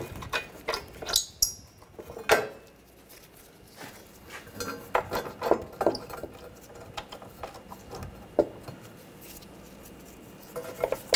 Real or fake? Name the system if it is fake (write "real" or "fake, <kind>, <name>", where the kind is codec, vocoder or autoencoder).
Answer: real